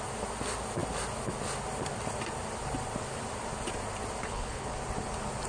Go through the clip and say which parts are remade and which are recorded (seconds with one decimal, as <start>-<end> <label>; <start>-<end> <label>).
0.0-4.2 recorded; 4.2-4.8 remade; 4.8-5.5 recorded